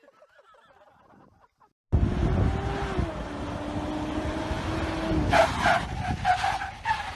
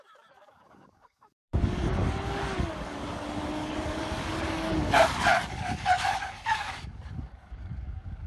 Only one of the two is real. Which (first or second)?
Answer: first